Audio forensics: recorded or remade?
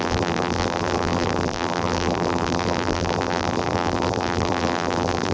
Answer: remade